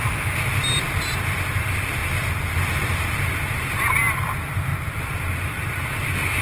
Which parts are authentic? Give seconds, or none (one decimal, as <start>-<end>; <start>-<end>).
0.0-1.0; 2.0-2.5